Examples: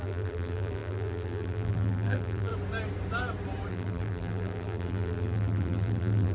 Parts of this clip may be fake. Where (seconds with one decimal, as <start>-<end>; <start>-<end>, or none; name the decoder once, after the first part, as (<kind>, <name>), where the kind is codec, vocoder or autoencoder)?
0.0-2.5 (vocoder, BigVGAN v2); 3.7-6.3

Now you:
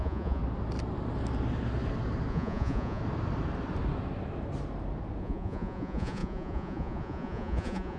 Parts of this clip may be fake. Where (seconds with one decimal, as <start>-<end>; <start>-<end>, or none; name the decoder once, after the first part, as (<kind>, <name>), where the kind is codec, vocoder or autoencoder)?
0.0-0.4 (vocoder, Vocos); 2.3-3.0; 5.2-8.0

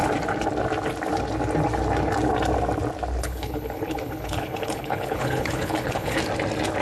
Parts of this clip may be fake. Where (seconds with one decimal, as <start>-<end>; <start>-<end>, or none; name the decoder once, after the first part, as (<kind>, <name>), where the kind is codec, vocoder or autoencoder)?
3.2-6.2 (codec, HILCodec)

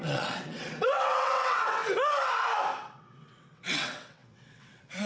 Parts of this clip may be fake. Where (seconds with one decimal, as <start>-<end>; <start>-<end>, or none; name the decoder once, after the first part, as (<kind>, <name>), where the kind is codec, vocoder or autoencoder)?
0.0-1.8 (vocoder, WaveNeXt); 2.8-5.1